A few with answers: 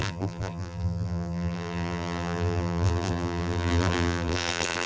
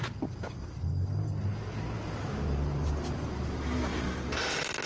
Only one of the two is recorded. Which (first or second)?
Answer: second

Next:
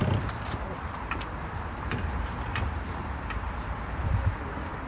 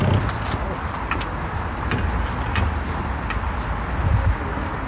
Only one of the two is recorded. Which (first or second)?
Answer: second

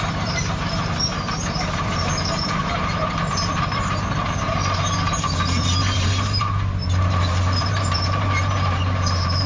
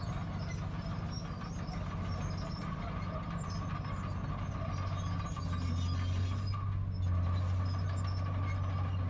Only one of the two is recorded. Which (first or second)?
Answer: second